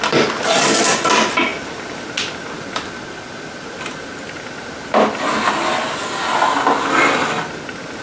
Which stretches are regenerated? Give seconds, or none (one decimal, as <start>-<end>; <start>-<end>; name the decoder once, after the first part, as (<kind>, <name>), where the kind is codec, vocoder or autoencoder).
none